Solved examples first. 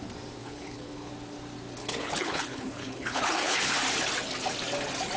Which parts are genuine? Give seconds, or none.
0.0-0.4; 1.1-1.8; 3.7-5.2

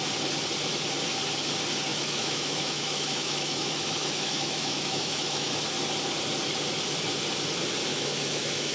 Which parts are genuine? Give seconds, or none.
0.0-1.9; 5.5-7.9

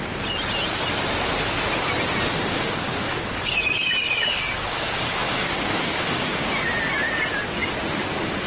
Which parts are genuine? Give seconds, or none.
0.0-2.3; 6.5-8.5

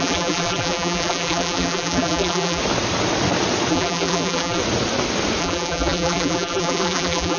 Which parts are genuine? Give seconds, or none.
2.6-3.7; 4.6-5.4

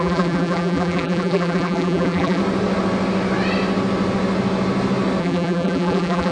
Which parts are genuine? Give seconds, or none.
2.4-5.2